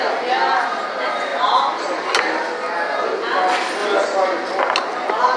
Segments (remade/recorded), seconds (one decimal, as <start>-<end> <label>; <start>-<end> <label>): 0.0-5.4 recorded